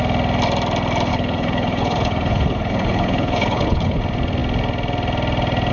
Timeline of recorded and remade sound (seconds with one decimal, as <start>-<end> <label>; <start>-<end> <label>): 0.0-1.1 recorded; 1.1-4.0 remade; 4.0-5.7 recorded